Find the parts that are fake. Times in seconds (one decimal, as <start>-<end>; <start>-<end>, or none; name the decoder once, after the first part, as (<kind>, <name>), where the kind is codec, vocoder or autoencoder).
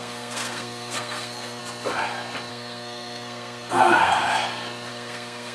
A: 0.0-1.6 (codec, SNAC); 2.5-4.2; 4.9-5.5